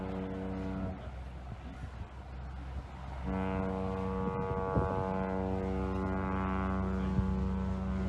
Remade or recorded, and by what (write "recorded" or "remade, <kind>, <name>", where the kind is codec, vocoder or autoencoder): recorded